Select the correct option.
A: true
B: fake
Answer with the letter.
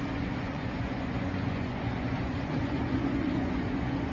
B